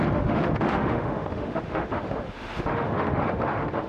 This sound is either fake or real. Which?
fake